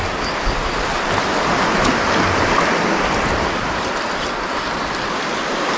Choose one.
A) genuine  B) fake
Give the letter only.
A